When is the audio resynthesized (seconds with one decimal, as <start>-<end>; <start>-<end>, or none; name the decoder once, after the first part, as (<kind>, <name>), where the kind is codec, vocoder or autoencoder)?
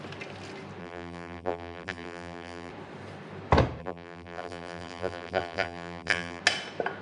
0.8-2.7 (vocoder, BigVGAN v2); 3.8-6.4